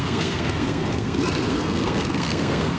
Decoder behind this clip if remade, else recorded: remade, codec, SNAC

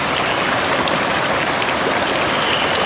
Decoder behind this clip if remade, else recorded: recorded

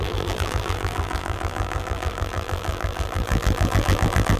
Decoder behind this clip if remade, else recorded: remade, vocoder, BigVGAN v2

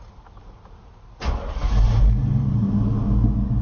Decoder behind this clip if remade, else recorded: recorded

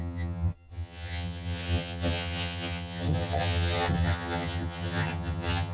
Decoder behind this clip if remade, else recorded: remade, vocoder, HiFi-GAN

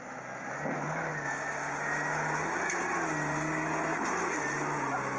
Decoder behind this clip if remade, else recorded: recorded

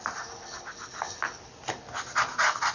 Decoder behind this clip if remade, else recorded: recorded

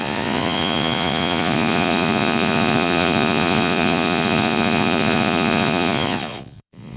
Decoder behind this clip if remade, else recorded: remade, vocoder, Vocos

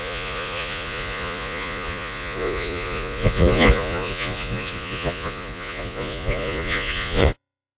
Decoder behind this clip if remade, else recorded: remade, vocoder, Vocos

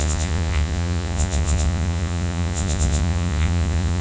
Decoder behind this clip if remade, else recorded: remade, vocoder, Vocos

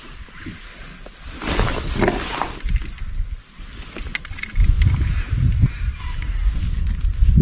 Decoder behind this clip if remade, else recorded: recorded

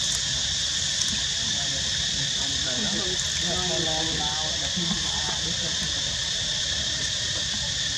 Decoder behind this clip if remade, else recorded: recorded